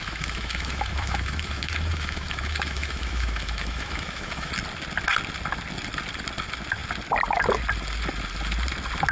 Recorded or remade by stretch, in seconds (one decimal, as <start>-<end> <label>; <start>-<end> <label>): 0.0-4.5 remade; 4.5-9.1 recorded